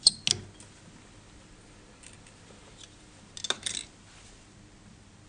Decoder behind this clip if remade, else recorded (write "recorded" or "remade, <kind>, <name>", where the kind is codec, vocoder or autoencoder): recorded